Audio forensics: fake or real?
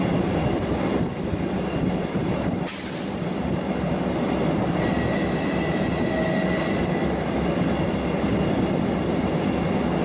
real